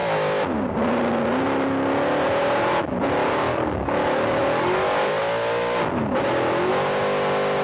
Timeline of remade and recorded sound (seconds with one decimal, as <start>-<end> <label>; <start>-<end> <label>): 0.0-3.5 recorded; 3.5-5.1 remade; 5.1-7.6 recorded